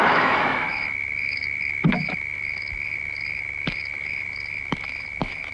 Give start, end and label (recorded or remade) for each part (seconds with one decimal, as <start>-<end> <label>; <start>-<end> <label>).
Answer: 0.0-5.5 remade